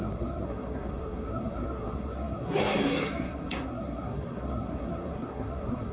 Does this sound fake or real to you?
fake